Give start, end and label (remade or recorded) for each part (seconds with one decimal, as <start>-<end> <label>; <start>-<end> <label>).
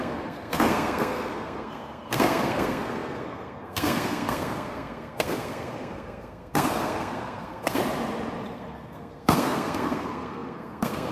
0.0-7.8 remade; 7.8-8.5 recorded; 8.5-11.1 remade